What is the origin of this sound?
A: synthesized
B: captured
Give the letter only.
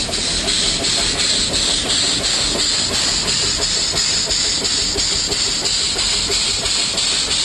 B